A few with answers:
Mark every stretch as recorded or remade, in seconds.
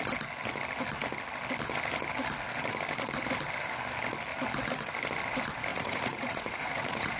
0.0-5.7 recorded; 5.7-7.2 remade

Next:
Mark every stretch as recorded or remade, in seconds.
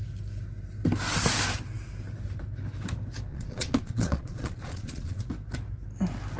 0.0-3.3 recorded; 3.3-5.2 remade; 5.2-6.4 recorded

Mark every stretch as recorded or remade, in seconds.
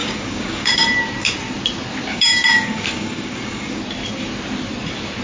0.0-0.7 remade; 0.7-2.1 recorded; 2.1-3.8 remade; 3.8-5.2 recorded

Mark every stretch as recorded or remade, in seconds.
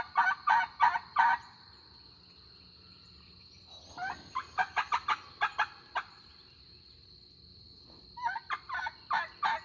0.0-9.6 recorded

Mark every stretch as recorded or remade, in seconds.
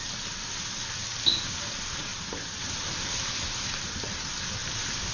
0.0-2.1 recorded; 2.1-3.9 remade; 3.9-5.1 recorded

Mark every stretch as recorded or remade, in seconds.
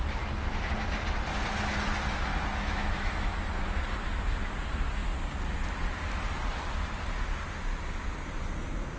0.0-2.3 recorded; 2.3-3.4 remade; 3.4-9.0 recorded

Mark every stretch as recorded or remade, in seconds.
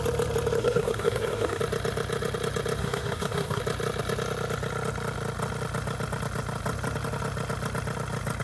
0.0-0.6 recorded; 0.6-1.6 remade; 1.6-2.8 recorded; 2.8-3.6 remade; 3.6-8.4 recorded